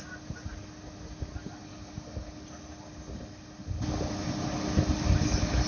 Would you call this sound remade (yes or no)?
no